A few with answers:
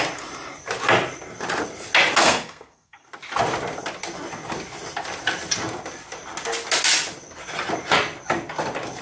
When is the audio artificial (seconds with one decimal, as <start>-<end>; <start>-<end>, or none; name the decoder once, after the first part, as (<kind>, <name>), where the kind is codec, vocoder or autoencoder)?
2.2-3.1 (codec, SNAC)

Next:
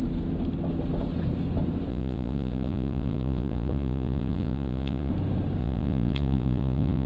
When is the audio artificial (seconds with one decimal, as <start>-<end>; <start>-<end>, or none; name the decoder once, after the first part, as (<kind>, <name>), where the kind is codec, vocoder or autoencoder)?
1.9-5.1 (vocoder, Vocos); 5.6-7.1

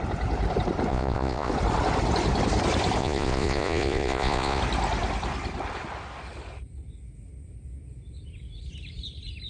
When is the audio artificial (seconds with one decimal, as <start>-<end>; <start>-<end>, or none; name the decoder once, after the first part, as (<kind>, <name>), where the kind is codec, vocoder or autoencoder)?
0.9-1.5 (vocoder, Vocos); 3.0-4.6

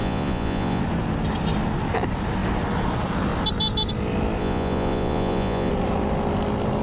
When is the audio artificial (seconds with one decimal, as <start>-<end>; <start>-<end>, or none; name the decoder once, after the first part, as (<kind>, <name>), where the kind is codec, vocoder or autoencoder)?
0.0-0.8 (vocoder, Vocos); 4.4-5.7

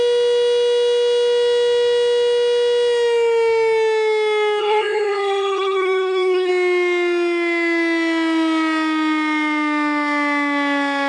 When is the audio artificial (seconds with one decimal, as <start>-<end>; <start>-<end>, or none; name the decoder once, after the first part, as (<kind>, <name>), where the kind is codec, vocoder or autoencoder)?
4.6-6.5 (codec, SNAC)

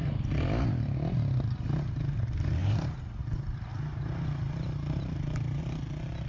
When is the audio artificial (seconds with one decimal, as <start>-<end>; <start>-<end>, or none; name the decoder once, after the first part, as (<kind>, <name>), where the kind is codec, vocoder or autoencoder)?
2.6-3.1 (vocoder, BigVGAN v2); 3.7-5.6